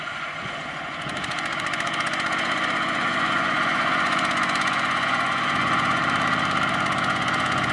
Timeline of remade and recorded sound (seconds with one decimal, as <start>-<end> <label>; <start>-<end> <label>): 0.0-6.0 remade; 6.0-6.7 recorded; 6.7-7.7 remade